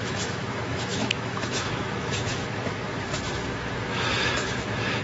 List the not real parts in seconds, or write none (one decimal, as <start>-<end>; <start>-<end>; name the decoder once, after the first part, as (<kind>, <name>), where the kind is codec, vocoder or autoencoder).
0.0-5.0 (autoencoder, DAC-VAE)